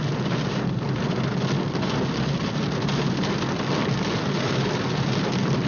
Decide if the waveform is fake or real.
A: real